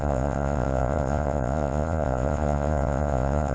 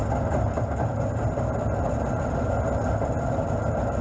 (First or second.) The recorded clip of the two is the second